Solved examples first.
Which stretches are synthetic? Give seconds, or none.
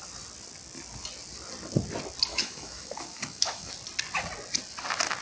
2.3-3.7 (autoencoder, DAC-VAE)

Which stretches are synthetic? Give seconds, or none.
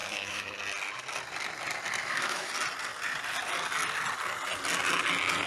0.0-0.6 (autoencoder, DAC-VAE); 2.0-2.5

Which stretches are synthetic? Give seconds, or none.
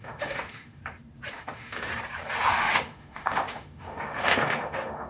0.0-0.8 (autoencoder, DAC-VAE); 1.3-1.9; 2.5-5.1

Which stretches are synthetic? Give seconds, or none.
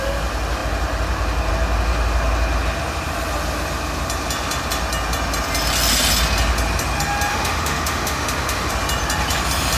7.3-8.7 (autoencoder, DAC-VAE)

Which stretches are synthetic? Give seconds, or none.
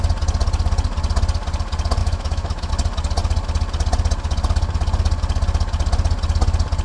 2.0-2.7 (autoencoder, DAC-VAE)